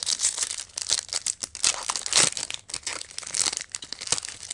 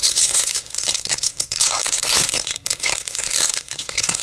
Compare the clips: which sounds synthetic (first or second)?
second